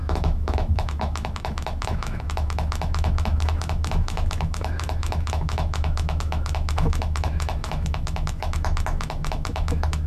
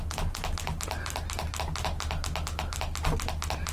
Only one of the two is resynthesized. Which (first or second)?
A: first